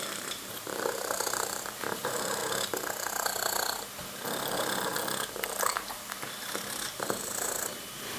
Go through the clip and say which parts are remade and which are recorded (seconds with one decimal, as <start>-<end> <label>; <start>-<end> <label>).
0.0-2.4 remade; 2.4-5.3 recorded; 5.3-8.2 remade